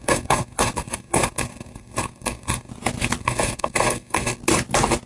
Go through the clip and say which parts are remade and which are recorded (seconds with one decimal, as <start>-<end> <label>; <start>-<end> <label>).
0.0-2.7 remade; 2.7-3.2 recorded; 3.2-4.4 remade; 4.4-5.1 recorded